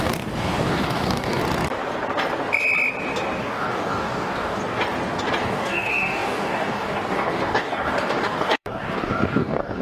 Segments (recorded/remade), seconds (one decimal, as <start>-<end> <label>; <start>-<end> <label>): 0.0-1.4 remade; 1.4-3.4 recorded; 3.4-4.6 remade; 4.6-5.4 recorded; 5.4-9.8 remade